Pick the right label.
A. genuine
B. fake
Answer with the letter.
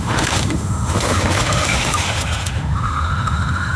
B